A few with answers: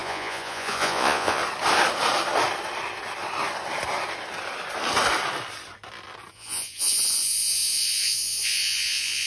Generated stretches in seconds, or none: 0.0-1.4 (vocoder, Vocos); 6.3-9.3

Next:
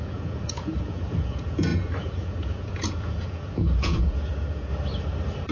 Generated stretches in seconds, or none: 0.0-4.7 (vocoder, Vocos)